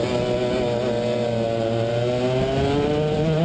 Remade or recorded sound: recorded